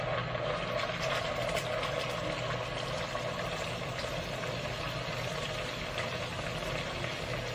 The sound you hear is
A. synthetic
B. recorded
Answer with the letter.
B